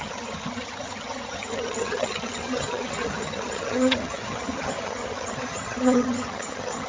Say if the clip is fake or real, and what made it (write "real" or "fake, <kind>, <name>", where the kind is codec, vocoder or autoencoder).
fake, vocoder, HiFi-GAN